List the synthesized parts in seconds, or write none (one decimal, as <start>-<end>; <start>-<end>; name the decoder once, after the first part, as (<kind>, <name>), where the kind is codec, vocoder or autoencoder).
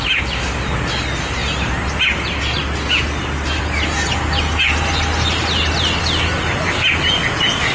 none